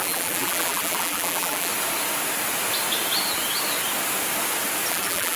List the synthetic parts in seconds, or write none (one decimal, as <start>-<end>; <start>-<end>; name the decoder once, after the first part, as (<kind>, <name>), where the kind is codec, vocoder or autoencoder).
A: 0.0-1.7 (vocoder, BigVGAN v2); 4.9-5.4